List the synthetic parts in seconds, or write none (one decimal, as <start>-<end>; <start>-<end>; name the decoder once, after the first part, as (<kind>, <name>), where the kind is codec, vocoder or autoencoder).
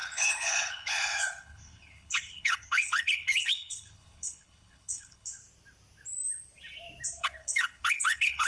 0.0-5.4 (codec, HILCodec); 7.2-8.5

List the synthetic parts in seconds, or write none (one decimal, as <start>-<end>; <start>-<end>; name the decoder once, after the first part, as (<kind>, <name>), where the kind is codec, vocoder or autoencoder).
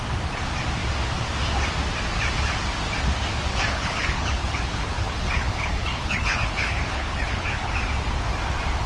3.5-7.7 (codec, HILCodec)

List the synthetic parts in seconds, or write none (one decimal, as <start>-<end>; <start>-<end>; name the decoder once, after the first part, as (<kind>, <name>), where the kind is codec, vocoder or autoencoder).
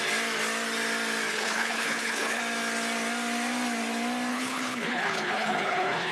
1.3-2.4 (codec, HILCodec); 4.3-6.1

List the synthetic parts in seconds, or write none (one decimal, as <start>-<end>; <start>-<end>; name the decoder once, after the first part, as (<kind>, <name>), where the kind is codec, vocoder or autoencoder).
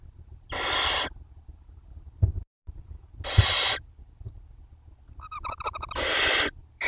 none